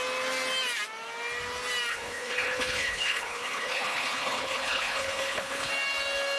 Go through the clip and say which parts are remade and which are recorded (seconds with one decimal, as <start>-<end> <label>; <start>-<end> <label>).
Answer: 0.0-1.9 recorded; 1.9-5.7 remade; 5.7-6.4 recorded